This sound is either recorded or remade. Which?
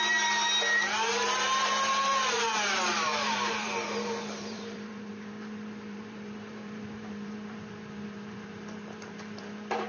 remade